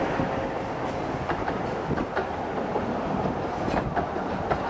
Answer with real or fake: real